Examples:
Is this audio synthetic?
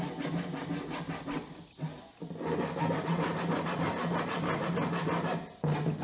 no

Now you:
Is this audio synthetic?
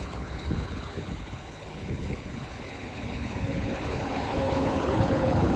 yes